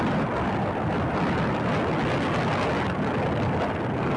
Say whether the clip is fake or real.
real